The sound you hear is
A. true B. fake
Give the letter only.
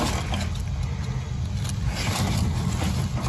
A